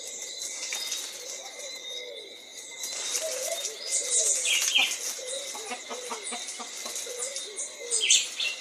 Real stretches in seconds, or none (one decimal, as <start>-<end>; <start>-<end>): 0.0-8.6